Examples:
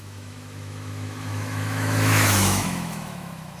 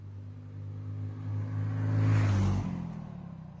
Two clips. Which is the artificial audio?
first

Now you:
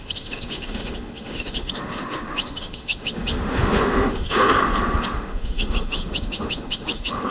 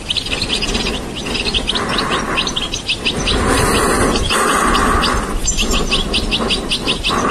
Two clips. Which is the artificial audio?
first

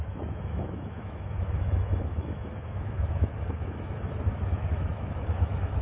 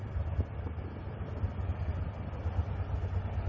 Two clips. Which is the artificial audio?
first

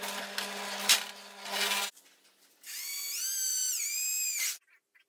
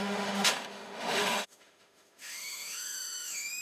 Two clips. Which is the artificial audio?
second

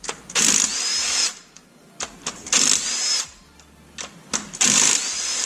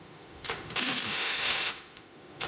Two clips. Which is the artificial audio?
second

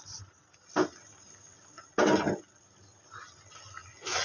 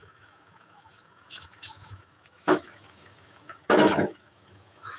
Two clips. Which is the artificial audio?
second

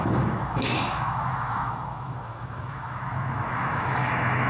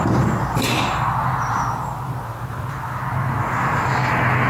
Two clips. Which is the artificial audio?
first